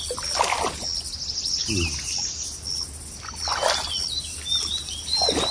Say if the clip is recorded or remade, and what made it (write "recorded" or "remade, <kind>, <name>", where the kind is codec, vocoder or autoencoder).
recorded